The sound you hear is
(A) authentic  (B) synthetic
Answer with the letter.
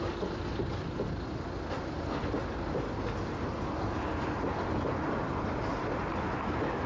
A